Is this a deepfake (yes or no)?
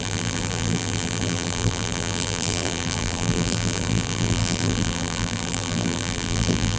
yes